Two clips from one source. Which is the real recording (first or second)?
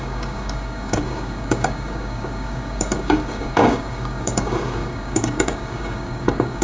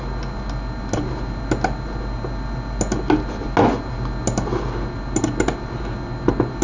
second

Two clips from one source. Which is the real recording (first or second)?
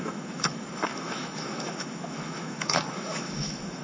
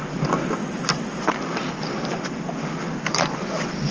second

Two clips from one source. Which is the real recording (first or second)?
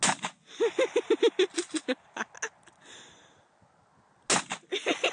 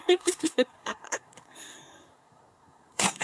first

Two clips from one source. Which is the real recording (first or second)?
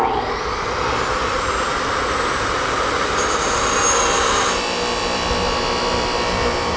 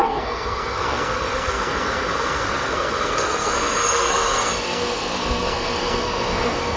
first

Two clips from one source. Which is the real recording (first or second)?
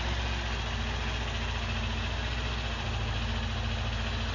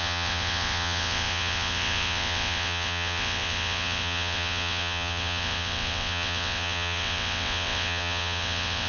first